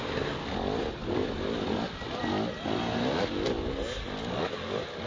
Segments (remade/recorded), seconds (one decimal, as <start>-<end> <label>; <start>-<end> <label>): 0.0-5.1 recorded